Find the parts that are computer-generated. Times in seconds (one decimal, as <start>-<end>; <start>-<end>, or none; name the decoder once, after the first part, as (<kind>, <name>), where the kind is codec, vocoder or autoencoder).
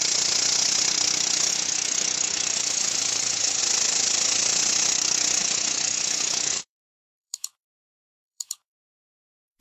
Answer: 1.5-3.6 (autoencoder, DAC-VAE); 5.4-9.6